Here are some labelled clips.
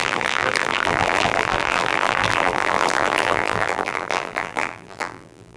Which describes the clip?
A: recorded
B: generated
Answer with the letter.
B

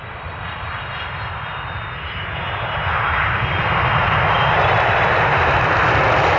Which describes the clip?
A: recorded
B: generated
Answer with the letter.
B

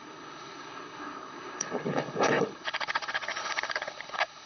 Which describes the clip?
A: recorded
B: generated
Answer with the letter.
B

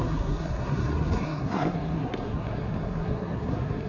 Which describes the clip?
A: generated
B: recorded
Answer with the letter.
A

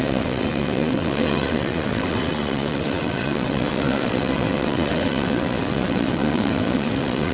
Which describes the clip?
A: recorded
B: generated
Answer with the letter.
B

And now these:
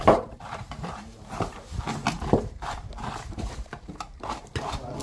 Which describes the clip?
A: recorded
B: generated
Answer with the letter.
B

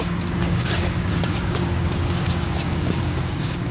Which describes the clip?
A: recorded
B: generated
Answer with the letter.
B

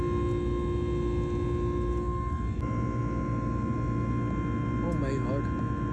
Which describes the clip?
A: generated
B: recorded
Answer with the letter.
B